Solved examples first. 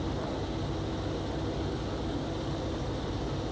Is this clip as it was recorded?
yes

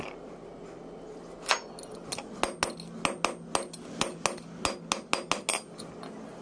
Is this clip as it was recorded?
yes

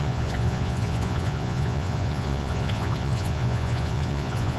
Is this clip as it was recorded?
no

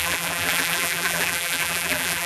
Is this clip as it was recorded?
no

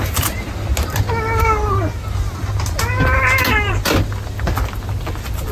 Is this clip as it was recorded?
yes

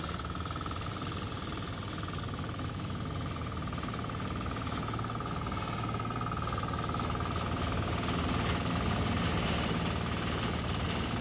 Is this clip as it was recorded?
yes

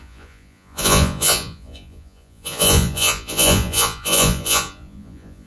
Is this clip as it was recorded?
no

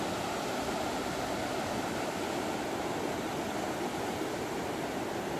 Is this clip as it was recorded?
yes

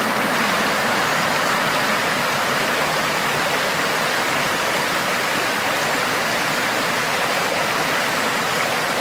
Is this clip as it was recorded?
yes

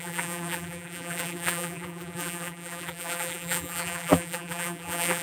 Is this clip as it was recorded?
no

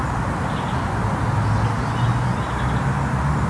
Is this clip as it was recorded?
yes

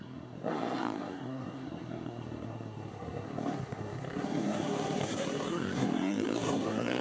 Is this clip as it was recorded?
no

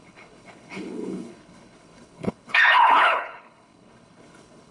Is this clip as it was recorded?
no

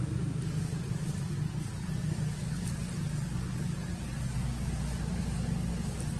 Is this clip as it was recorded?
yes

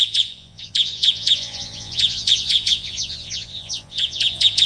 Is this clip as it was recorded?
no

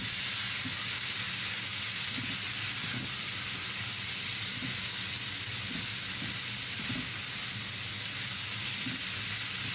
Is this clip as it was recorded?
yes